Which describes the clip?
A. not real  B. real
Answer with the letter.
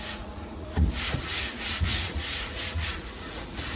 A